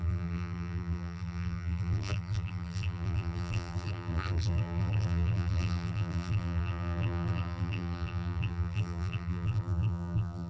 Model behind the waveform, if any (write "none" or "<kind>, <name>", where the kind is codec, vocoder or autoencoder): vocoder, BigVGAN v2